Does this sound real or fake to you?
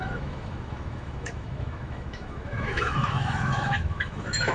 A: fake